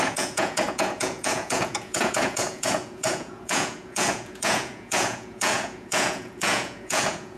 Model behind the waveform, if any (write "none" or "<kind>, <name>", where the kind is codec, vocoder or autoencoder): vocoder, Vocos